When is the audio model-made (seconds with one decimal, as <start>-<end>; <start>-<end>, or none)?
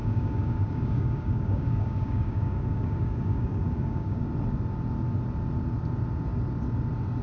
0.0-4.3